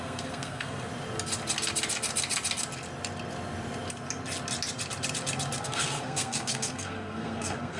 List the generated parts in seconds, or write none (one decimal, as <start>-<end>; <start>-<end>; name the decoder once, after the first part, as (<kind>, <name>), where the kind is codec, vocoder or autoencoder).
0.0-0.9 (codec, SNAC); 5.6-7.8